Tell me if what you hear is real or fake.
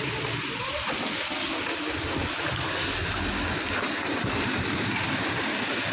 real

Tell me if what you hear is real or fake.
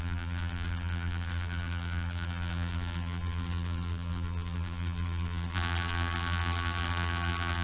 fake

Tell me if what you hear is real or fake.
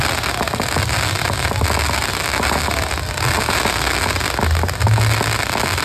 real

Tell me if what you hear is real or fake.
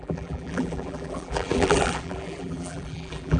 fake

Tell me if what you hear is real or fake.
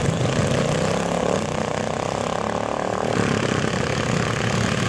real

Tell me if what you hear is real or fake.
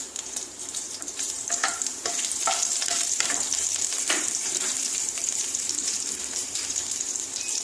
fake